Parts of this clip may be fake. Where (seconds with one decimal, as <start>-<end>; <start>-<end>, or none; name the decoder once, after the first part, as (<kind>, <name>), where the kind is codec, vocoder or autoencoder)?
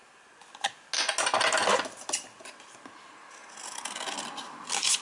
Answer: none